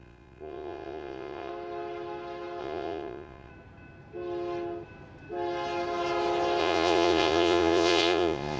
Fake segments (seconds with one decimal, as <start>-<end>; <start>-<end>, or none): 0.0-1.5; 2.6-3.5; 6.6-8.6